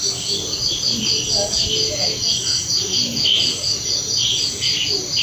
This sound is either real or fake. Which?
real